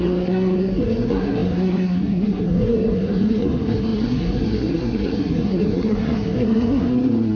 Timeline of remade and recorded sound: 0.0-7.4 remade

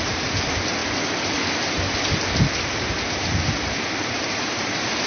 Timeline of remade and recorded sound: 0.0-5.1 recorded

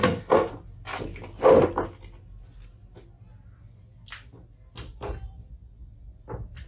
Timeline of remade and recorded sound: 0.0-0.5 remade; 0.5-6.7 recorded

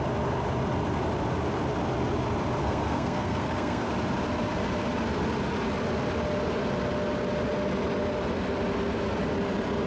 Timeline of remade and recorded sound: 0.0-2.6 recorded; 2.6-3.9 remade; 3.9-9.9 recorded

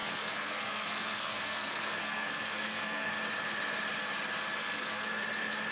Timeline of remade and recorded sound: 0.0-3.1 remade; 3.1-4.6 recorded; 4.6-5.2 remade; 5.2-5.7 recorded